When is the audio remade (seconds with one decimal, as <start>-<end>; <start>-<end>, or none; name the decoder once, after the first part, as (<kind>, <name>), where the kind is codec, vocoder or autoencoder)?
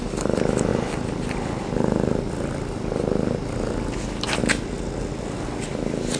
none